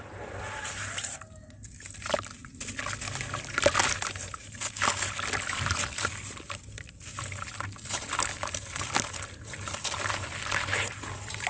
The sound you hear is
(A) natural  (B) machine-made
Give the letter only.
A